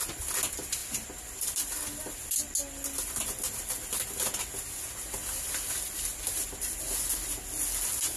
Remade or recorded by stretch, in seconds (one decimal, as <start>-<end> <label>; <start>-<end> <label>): 0.0-5.2 recorded; 5.2-6.6 remade; 6.6-8.2 recorded